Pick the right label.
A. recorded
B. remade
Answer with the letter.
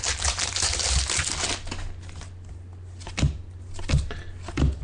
A